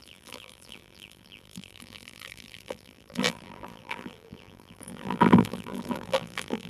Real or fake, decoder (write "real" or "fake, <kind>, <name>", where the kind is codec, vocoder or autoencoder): fake, vocoder, BigVGAN v2